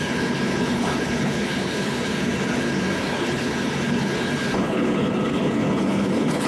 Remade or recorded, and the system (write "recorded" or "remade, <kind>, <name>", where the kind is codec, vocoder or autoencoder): remade, codec, HILCodec